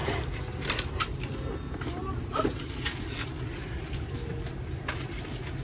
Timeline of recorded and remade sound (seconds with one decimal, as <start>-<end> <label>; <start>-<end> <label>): 0.0-5.6 recorded